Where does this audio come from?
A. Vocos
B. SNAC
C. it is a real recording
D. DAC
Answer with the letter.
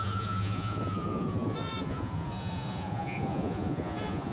A